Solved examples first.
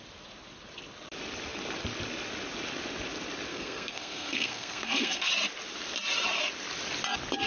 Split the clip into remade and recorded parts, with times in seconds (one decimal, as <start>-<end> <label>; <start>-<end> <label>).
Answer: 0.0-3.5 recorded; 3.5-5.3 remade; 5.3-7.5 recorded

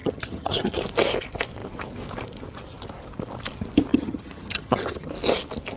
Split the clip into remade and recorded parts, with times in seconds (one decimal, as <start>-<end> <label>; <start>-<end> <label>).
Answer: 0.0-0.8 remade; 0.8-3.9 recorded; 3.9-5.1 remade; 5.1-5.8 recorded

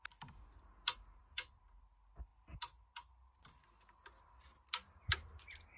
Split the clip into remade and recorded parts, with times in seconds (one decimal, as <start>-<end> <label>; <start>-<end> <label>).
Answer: 0.0-5.8 recorded

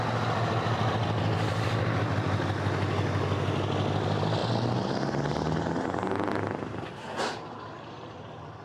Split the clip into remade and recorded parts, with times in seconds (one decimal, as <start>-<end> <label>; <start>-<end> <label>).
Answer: 0.0-8.6 recorded

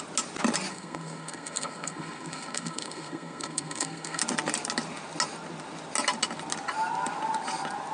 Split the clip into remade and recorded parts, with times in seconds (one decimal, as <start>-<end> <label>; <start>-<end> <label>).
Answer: 0.0-0.7 recorded; 0.7-4.2 remade; 4.2-7.9 recorded

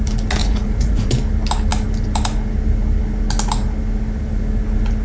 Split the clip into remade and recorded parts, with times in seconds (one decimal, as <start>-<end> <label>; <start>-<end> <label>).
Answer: 0.0-0.4 recorded; 0.4-1.1 remade; 1.1-5.0 recorded

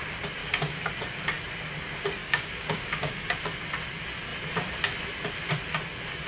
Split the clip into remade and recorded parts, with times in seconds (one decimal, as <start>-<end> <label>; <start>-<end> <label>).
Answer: 0.0-0.4 recorded; 0.4-0.9 remade; 0.9-2.2 recorded; 2.2-3.4 remade; 3.4-6.3 recorded

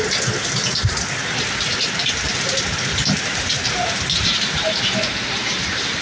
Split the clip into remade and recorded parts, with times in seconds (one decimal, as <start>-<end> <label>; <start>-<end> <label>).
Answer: 0.0-3.3 recorded; 3.3-4.5 remade; 4.5-6.0 recorded